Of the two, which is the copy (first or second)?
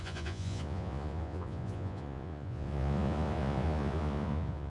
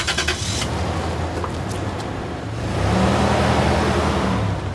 first